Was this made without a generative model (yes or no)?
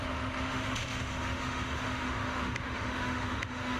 no